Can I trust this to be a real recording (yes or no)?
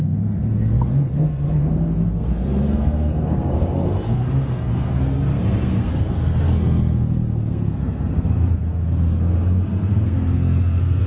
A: no